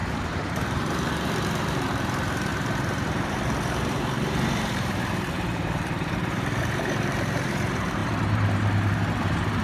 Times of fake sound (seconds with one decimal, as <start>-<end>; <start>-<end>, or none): 0.0-9.6